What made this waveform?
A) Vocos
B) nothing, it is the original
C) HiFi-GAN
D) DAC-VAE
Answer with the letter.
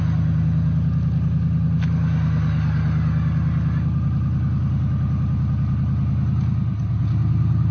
B